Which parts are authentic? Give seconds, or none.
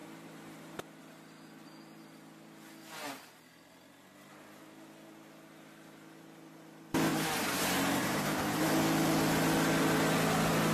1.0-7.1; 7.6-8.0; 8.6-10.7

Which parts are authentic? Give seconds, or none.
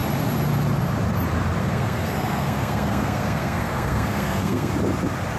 0.0-1.6; 4.7-5.4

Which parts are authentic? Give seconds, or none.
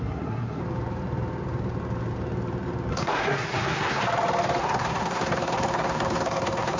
0.6-2.9; 4.0-4.6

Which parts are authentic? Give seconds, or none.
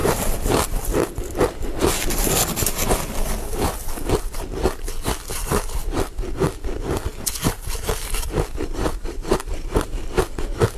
4.2-7.1; 10.4-10.8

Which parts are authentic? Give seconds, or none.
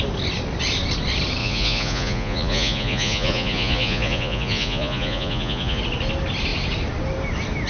0.0-1.4; 5.8-7.7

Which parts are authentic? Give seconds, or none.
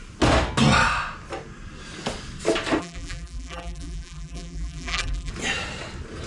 0.0-2.8; 5.3-6.3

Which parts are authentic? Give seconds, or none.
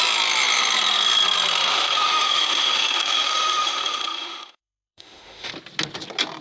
0.0-1.7; 5.5-6.4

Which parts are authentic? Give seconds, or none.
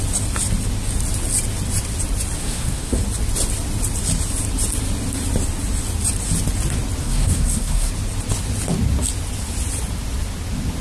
0.0-2.4; 3.0-7.0; 7.9-10.8